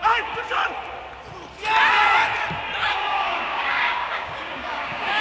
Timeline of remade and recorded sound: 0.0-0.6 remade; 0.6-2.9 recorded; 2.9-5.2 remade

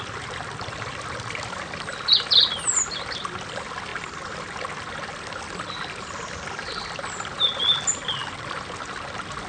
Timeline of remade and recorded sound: 0.0-9.5 recorded

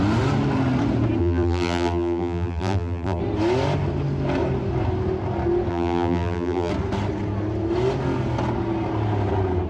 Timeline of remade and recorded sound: 0.0-1.2 recorded; 1.2-3.2 remade; 3.2-5.7 recorded; 5.7-6.7 remade; 6.7-9.7 recorded

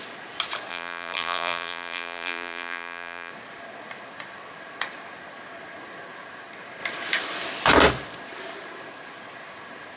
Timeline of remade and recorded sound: 0.0-0.7 recorded; 0.7-3.3 remade; 3.3-10.0 recorded

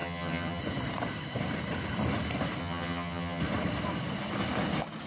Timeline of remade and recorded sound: 0.0-0.6 remade; 0.6-2.6 recorded; 2.6-3.4 remade; 3.4-5.1 recorded